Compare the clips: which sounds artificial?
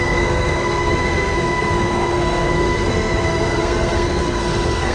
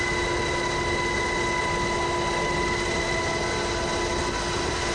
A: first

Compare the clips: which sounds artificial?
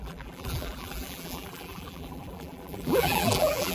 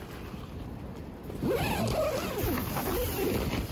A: first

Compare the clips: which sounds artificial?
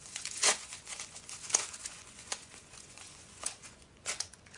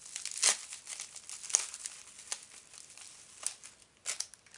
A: first